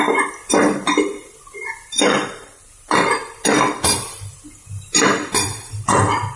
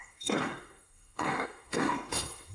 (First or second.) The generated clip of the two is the second